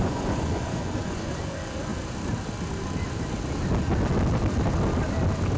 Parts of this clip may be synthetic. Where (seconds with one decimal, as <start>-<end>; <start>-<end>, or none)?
0.0-1.9